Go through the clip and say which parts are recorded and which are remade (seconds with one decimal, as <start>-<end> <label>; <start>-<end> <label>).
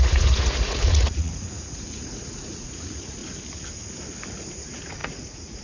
0.0-3.2 remade; 3.2-4.5 recorded; 4.5-5.6 remade